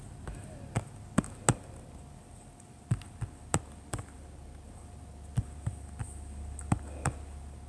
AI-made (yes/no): no